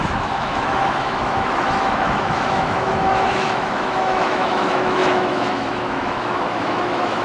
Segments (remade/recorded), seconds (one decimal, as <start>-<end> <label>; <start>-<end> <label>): 0.0-7.2 remade